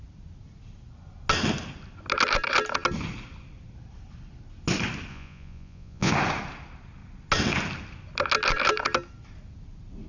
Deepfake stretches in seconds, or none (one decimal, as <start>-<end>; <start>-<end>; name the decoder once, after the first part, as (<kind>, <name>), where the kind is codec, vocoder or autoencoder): 5.1-6.1 (vocoder, Vocos)